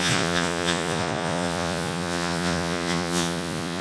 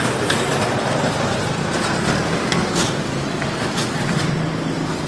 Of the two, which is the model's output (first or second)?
first